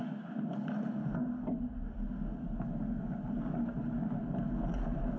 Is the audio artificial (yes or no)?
no